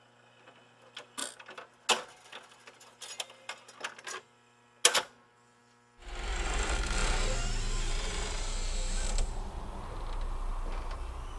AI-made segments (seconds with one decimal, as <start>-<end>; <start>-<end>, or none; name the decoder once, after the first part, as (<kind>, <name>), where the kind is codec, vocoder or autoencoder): none